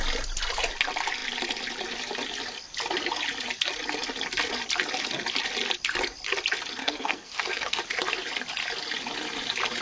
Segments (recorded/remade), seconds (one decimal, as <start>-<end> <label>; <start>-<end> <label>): 0.0-6.8 recorded; 6.8-7.8 remade; 7.8-9.8 recorded